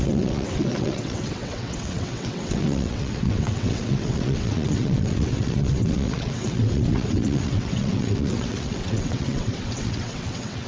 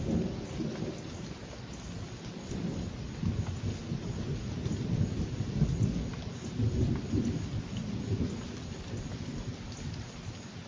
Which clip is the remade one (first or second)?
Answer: first